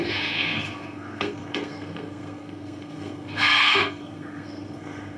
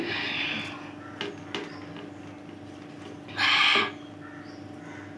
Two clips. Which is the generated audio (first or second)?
first